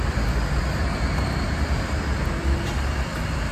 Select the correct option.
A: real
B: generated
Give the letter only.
A